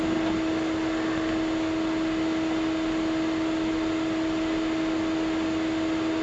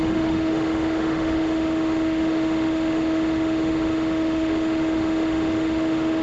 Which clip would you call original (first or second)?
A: first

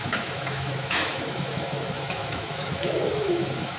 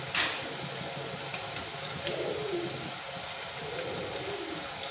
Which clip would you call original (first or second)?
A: second